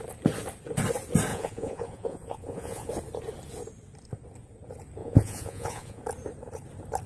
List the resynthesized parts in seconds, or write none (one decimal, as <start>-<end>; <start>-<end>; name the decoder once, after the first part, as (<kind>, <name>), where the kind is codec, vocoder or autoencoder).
1.3-2.9 (vocoder, Vocos); 5.0-6.0